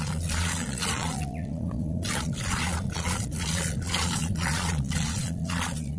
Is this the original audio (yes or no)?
no